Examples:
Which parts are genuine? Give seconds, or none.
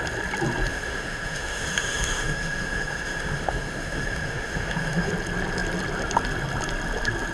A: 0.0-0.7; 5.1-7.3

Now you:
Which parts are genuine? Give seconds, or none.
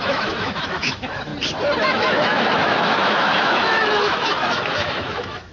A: 1.3-1.8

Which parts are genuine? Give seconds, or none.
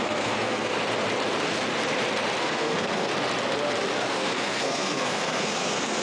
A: 0.7-2.4; 3.1-4.1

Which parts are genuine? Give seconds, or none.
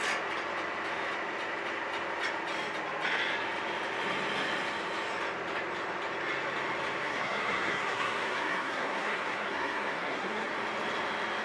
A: 0.0-7.0; 10.5-11.4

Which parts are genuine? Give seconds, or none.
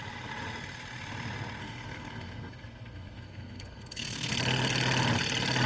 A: 0.0-1.6; 4.3-5.7